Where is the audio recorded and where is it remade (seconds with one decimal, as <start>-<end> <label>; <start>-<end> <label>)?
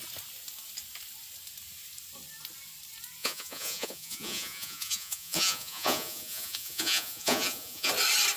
0.0-3.2 recorded; 3.2-7.9 remade; 7.9-8.4 recorded